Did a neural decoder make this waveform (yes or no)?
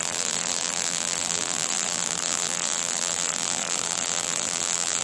yes